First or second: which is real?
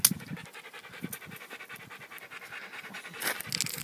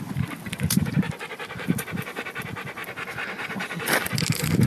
first